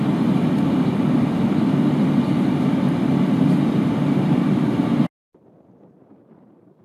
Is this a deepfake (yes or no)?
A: no